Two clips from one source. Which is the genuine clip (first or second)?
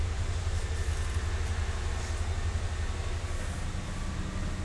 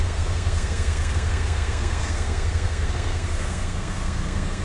first